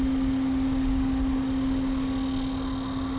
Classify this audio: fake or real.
real